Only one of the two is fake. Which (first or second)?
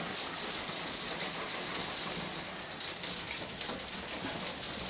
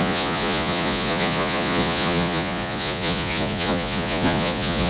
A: second